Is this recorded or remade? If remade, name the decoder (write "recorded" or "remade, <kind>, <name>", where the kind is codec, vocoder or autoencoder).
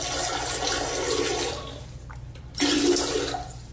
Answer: recorded